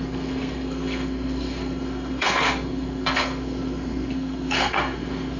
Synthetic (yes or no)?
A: yes